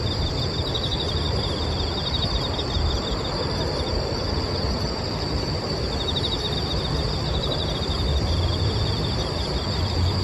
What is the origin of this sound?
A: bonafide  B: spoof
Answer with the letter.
B